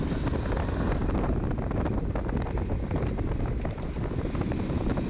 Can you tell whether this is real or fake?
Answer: real